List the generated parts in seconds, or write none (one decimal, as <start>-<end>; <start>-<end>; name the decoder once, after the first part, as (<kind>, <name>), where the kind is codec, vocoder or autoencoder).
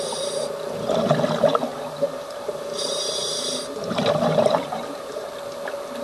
1.7-5.3 (vocoder, BigVGAN v2)